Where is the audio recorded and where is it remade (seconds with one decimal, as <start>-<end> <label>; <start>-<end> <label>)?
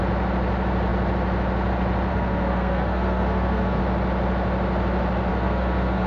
0.0-2.1 recorded; 2.1-3.8 remade; 3.8-5.3 recorded; 5.3-6.1 remade